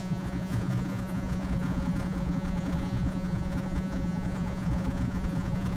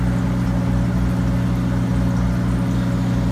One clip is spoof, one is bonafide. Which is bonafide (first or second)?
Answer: second